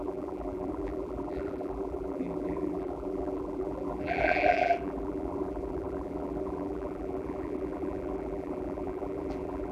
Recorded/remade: remade